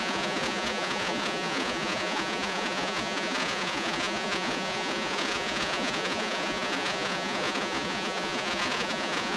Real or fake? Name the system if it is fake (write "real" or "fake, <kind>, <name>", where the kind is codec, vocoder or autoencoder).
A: fake, vocoder, Vocos